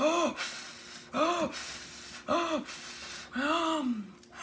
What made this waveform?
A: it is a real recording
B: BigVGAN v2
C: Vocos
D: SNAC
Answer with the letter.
A